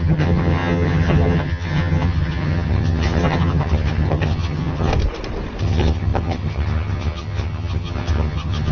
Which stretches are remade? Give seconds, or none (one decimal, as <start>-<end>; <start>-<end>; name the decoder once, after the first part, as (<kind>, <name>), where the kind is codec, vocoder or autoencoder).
0.0-4.9 (vocoder, HiFi-GAN); 5.6-8.7